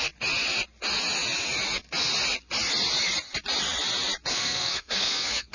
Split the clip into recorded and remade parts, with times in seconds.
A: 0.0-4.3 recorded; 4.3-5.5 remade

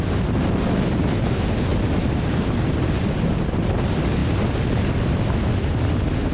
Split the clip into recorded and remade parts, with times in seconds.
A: 0.0-6.3 recorded

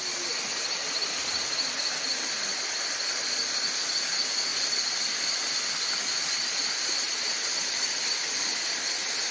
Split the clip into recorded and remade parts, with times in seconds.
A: 0.0-9.3 recorded

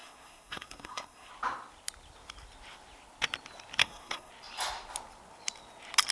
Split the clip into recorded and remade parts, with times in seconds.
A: 0.0-1.3 remade; 1.3-3.8 recorded; 3.8-4.3 remade; 4.3-6.1 recorded